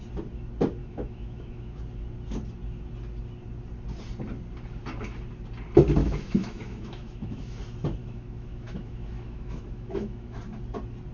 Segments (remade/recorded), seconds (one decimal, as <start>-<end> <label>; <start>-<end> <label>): 0.0-0.8 recorded; 0.8-1.8 remade; 1.8-6.0 recorded; 6.0-7.6 remade; 7.6-8.0 recorded; 8.0-10.4 remade; 10.4-11.1 recorded